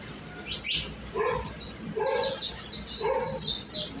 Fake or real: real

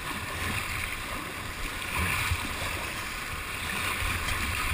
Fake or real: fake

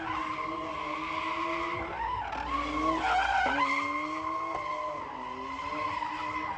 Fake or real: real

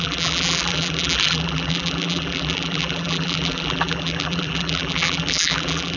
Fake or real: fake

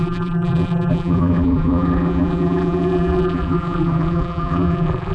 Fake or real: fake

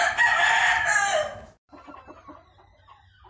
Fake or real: real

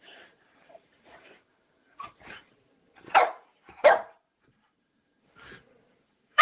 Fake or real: fake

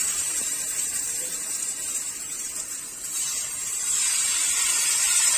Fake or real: fake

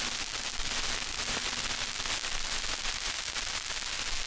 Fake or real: real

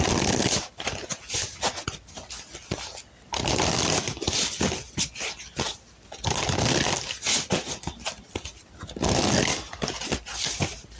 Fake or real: real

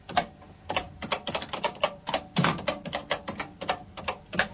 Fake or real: fake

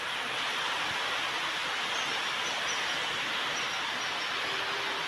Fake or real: real